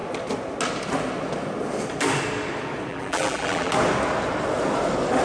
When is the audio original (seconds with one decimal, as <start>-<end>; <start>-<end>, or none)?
0.0-2.9; 3.7-5.2